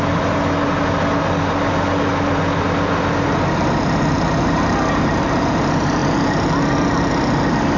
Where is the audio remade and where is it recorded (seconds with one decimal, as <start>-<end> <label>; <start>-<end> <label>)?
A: 0.0-7.8 recorded

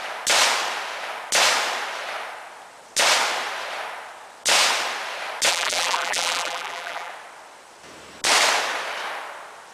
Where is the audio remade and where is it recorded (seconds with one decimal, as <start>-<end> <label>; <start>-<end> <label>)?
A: 0.0-5.5 recorded; 5.5-7.1 remade; 7.1-9.7 recorded